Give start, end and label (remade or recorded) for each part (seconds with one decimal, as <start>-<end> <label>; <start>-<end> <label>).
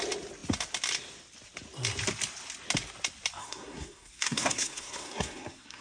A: 0.0-3.4 recorded; 3.4-5.8 remade